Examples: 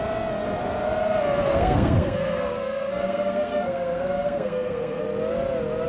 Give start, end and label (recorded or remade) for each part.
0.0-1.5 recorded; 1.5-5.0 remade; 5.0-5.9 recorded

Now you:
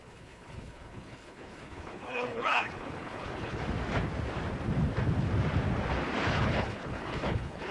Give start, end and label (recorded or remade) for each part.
0.0-3.6 remade; 3.6-6.3 recorded; 6.3-7.7 remade